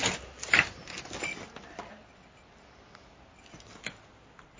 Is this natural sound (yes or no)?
yes